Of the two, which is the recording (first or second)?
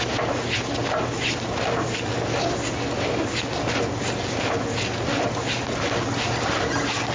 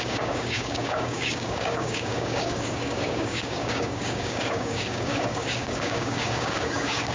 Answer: first